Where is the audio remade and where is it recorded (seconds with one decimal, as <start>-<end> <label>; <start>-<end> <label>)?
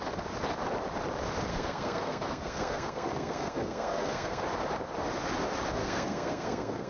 0.0-1.5 recorded; 1.5-4.4 remade; 4.4-5.8 recorded; 5.8-6.9 remade